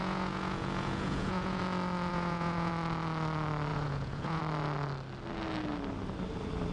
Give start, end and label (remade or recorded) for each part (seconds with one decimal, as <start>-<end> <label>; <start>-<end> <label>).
0.0-1.6 remade; 1.6-2.1 recorded; 2.1-2.7 remade; 2.7-3.7 recorded; 3.7-4.4 remade; 4.4-6.7 recorded